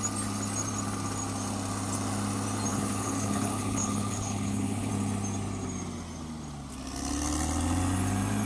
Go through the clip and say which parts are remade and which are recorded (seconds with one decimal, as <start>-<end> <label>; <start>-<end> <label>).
0.0-2.7 recorded; 2.7-4.9 remade; 4.9-8.5 recorded